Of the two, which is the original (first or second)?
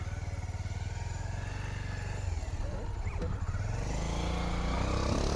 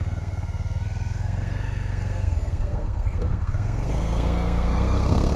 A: first